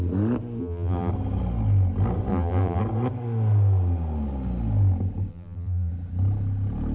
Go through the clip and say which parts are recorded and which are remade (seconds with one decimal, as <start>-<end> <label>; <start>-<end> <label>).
0.0-0.6 recorded; 0.6-1.1 remade; 1.1-2.3 recorded; 2.3-2.8 remade; 2.8-5.3 recorded; 5.3-5.9 remade; 5.9-6.9 recorded

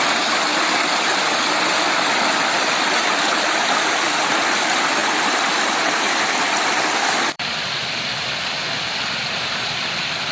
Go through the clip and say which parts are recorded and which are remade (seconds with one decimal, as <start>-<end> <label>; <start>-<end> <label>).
0.0-0.5 remade; 0.5-2.6 recorded; 2.6-5.0 remade; 5.0-6.0 recorded; 6.0-10.3 remade

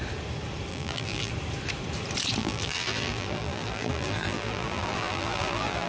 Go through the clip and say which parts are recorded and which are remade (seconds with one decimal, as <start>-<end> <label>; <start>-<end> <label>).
0.0-0.7 recorded; 0.7-1.3 remade; 1.3-2.4 recorded; 2.4-5.9 remade

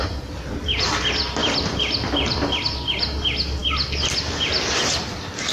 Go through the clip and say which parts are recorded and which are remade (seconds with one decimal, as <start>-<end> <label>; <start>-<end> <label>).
0.0-1.4 recorded; 1.4-2.6 remade; 2.6-5.5 recorded

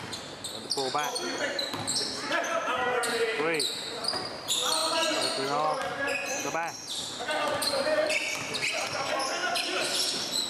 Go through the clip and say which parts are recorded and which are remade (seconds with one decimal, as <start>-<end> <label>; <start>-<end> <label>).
0.0-10.5 recorded

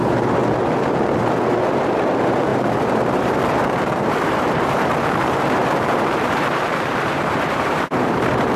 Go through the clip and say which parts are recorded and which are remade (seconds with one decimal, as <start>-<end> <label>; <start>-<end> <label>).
0.0-0.4 remade; 0.4-1.6 recorded; 1.6-8.6 remade

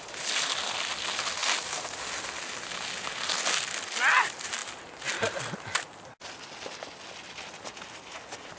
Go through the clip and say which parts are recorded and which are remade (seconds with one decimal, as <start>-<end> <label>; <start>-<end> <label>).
0.0-8.6 recorded